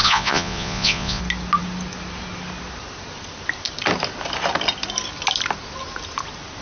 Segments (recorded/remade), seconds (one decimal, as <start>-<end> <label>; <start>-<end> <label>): 0.0-1.2 remade; 1.2-6.6 recorded